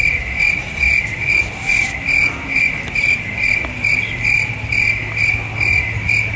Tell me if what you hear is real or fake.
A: real